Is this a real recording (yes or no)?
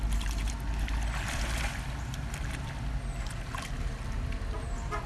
yes